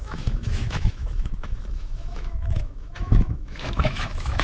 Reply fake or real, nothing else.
fake